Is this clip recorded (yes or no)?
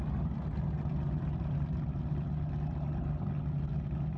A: yes